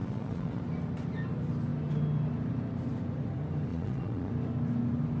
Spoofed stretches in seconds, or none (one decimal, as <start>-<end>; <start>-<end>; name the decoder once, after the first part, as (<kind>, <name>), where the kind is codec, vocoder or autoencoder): 0.0-0.6 (vocoder, Vocos); 3.7-4.3